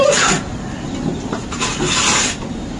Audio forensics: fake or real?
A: real